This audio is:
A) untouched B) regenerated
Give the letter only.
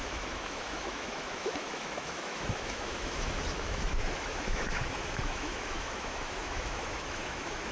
B